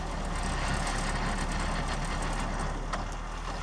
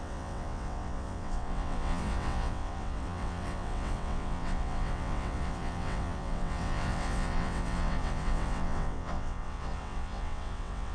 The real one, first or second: first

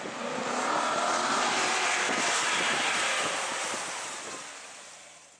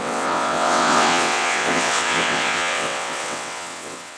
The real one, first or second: first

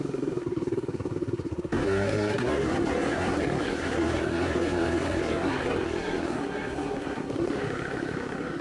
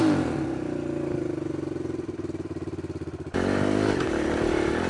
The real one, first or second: second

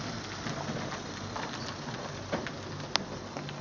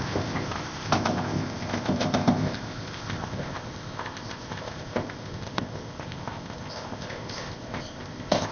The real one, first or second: first